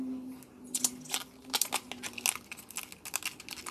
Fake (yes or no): no